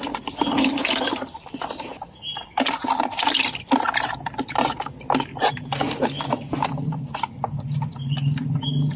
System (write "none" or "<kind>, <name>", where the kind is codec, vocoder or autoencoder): none